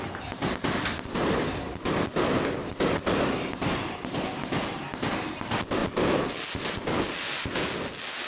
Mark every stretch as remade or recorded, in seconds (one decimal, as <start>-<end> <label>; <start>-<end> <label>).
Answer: 0.0-5.8 recorded; 5.8-8.3 remade

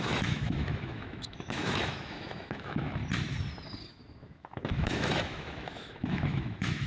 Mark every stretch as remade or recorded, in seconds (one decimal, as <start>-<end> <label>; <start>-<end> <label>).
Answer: 0.0-3.0 remade; 3.0-3.9 recorded; 3.9-6.9 remade

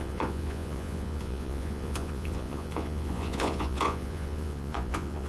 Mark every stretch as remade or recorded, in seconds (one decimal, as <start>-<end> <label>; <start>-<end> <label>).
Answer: 0.0-5.3 remade

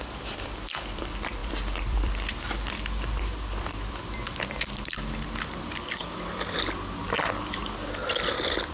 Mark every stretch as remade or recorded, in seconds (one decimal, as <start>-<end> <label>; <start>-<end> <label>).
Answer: 0.0-7.6 remade; 7.6-8.7 recorded

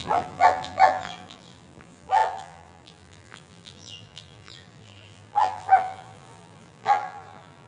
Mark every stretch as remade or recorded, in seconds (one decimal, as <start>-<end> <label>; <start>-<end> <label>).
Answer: 0.0-7.7 remade

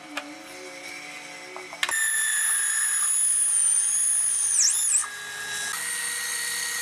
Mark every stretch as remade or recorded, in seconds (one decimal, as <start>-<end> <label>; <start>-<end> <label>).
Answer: 0.0-3.1 recorded; 3.1-3.6 remade; 3.6-6.8 recorded

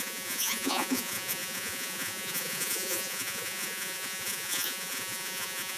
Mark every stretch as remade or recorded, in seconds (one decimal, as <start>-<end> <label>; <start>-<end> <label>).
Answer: 0.0-5.8 remade